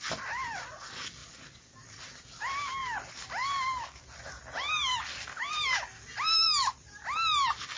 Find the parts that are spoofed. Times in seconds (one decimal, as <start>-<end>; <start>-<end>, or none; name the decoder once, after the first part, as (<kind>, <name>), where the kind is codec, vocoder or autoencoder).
none